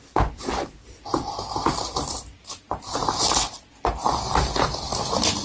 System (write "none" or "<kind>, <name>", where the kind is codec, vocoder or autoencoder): none